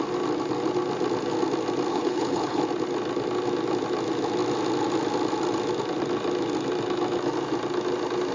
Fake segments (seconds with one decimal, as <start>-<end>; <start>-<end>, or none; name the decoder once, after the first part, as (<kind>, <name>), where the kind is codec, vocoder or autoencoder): 1.9-2.6 (codec, HILCodec)